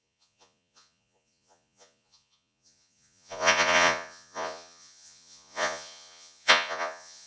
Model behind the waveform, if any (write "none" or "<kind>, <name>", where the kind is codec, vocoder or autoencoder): vocoder, Vocos